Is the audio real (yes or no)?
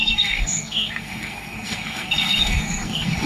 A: no